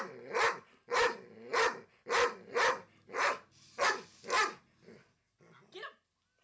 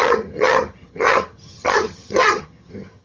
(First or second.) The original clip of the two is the first